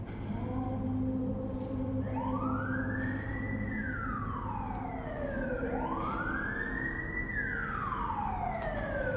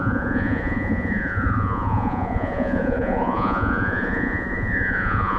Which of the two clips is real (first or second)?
first